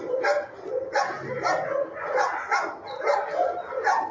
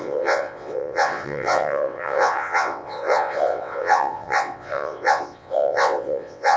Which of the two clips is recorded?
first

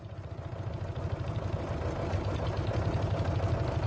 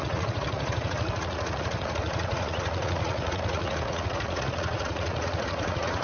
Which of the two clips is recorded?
first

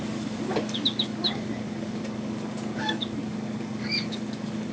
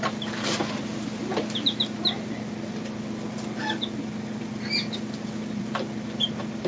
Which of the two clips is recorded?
second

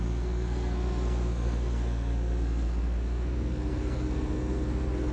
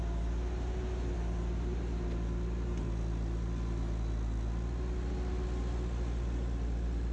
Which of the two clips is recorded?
second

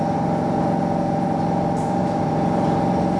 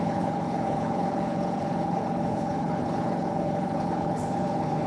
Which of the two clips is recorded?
first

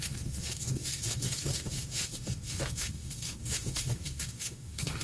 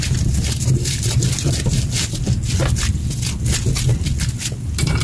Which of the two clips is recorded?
second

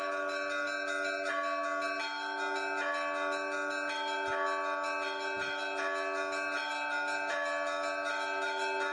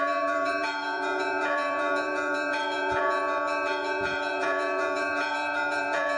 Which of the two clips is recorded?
first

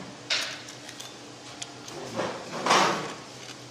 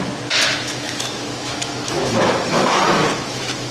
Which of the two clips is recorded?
first